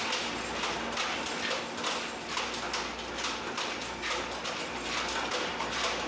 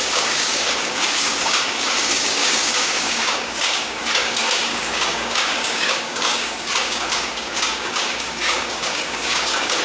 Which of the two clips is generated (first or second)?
second